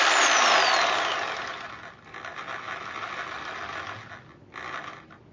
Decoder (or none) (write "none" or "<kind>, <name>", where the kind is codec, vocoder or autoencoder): none